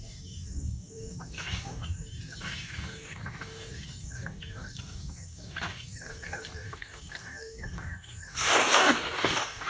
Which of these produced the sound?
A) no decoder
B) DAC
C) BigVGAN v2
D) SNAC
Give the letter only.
B